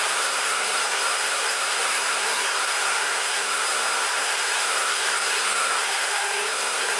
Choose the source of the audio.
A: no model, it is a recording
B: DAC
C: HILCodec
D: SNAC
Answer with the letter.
D